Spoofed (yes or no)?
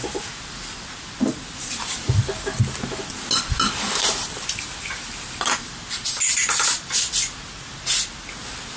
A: no